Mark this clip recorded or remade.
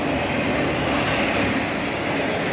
recorded